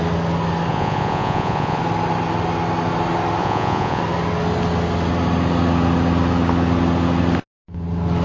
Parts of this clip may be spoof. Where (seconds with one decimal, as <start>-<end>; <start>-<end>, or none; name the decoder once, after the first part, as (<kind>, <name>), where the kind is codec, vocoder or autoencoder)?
0.7-1.8 (vocoder, Vocos); 3.4-4.0